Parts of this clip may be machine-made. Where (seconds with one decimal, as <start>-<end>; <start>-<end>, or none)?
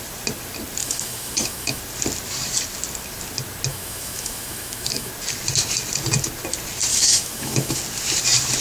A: 0.8-1.8; 3.7-5.1; 6.9-7.8